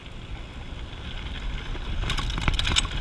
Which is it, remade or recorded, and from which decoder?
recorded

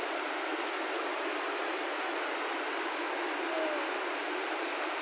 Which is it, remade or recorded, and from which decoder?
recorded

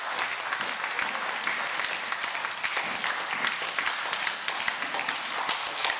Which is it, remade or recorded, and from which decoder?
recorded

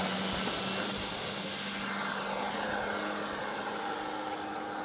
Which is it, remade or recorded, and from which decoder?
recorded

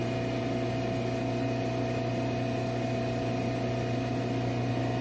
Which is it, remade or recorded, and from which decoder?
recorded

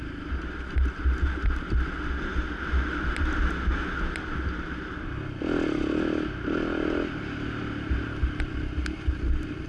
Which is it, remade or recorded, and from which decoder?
recorded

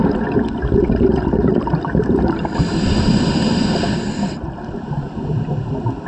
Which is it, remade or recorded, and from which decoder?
recorded